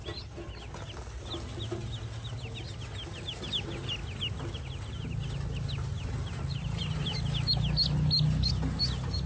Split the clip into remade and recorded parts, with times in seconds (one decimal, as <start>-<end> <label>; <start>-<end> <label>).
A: 0.0-9.3 recorded